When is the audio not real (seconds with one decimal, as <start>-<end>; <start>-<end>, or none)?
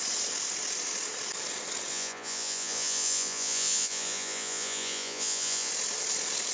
1.9-5.7